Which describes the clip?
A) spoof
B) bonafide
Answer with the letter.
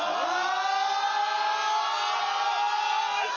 B